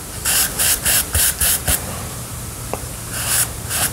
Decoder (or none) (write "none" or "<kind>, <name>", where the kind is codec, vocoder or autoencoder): vocoder, BigVGAN v2